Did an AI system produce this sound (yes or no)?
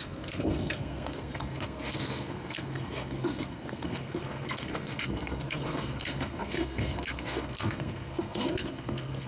yes